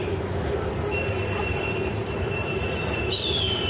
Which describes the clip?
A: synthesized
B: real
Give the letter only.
A